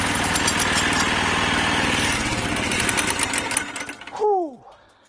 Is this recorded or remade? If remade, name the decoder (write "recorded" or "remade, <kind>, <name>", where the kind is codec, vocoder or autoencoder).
recorded